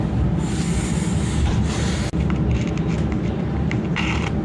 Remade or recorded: recorded